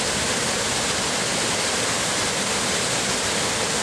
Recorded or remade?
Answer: recorded